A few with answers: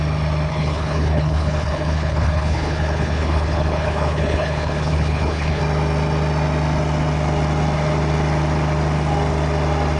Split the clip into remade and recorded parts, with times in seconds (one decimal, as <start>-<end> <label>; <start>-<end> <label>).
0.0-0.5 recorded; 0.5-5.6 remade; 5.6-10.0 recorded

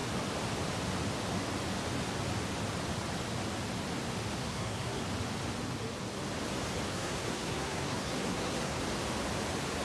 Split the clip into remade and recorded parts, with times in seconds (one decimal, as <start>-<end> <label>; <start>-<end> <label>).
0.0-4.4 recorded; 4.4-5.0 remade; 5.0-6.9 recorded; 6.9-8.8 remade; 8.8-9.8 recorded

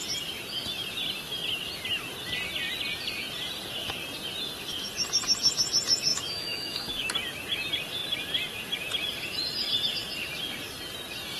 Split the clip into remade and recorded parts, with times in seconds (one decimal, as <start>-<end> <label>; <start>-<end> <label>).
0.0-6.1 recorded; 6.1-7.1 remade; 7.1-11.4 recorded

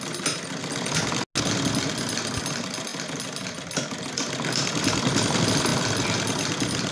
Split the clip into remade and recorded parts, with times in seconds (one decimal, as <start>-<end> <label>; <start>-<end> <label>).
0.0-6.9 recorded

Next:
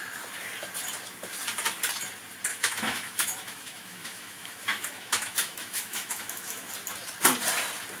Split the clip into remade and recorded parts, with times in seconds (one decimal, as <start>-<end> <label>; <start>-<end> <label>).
0.0-2.5 recorded; 2.5-6.7 remade; 6.7-8.0 recorded